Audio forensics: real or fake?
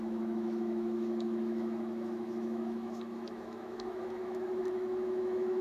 fake